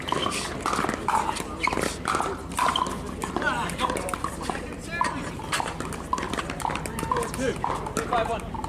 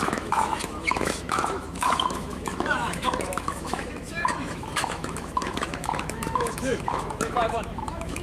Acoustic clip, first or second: first